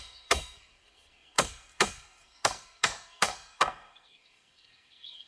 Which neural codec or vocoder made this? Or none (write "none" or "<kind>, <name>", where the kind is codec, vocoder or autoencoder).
codec, SNAC